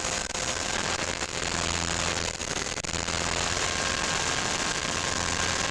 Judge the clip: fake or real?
real